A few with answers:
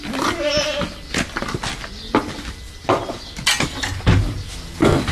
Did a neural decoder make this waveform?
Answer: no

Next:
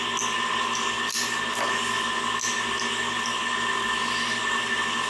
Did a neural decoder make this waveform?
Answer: no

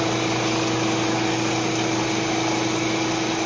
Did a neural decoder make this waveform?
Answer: no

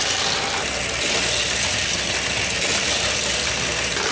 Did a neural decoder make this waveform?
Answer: no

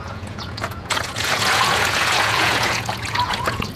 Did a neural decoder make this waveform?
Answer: yes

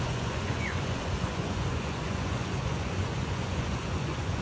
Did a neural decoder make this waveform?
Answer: yes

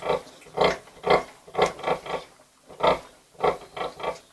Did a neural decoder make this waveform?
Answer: no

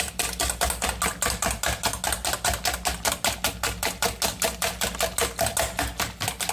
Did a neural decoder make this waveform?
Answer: no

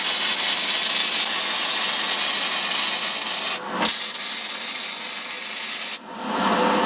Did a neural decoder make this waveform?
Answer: no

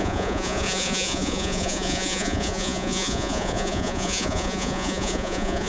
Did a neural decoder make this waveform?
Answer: yes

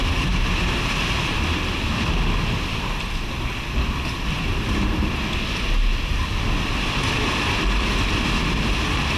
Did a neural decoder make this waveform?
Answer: no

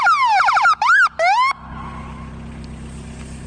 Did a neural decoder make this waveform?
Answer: no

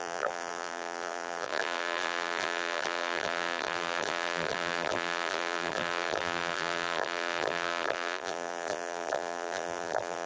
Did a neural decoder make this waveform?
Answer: yes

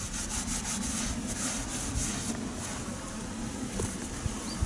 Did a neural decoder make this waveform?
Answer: no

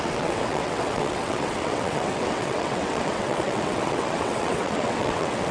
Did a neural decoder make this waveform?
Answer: yes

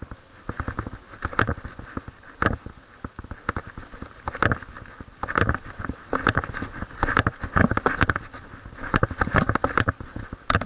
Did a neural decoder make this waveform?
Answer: no